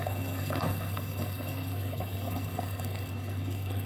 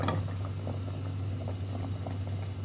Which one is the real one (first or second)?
second